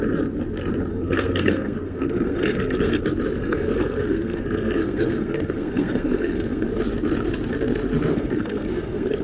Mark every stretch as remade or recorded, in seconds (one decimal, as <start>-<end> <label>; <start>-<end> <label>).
0.0-0.9 recorded; 0.9-3.0 remade; 3.0-3.4 recorded; 3.4-6.8 remade; 6.8-8.1 recorded; 8.1-9.2 remade